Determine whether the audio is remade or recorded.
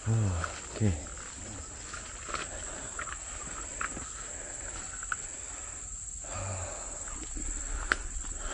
recorded